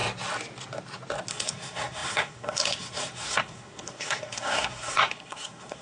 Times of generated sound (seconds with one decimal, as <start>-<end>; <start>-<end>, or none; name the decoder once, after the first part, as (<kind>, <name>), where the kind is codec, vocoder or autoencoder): 1.3-5.8 (codec, SNAC)

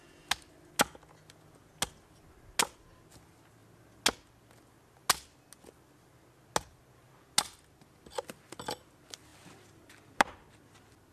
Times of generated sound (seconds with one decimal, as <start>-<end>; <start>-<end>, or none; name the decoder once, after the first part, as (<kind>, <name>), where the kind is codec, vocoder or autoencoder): none

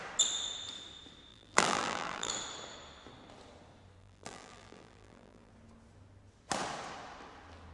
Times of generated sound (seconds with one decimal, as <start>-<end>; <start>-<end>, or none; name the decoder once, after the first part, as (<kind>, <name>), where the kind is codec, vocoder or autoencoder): 1.3-2.3 (vocoder, BigVGAN v2); 4.0-5.5

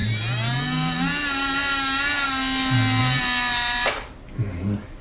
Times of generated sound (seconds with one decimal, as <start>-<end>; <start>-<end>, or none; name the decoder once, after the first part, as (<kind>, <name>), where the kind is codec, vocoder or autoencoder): none

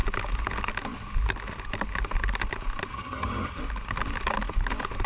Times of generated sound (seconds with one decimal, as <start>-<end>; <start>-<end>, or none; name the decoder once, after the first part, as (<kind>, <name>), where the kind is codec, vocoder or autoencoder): 2.9-3.6 (vocoder, HiFi-GAN)

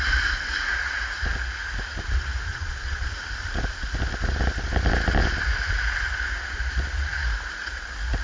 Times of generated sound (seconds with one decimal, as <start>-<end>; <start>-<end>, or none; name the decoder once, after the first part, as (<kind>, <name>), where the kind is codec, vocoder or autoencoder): 2.5-3.1 (vocoder, Vocos)

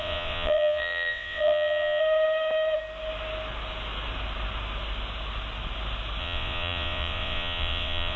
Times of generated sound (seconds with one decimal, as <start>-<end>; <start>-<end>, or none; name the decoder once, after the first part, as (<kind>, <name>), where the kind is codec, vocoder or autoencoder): 0.0-2.0 (vocoder, WaveNeXt); 6.2-8.2